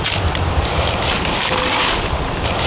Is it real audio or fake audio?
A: real